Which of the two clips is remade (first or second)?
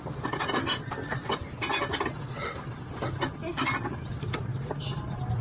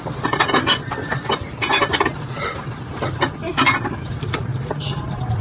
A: second